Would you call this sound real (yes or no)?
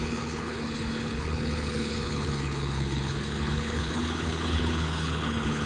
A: no